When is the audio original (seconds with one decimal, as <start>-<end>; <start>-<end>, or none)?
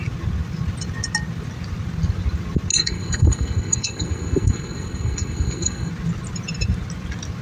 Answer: 0.0-2.7; 5.9-7.4